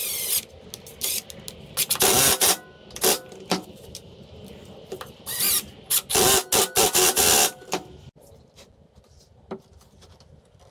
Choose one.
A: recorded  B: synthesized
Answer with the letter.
A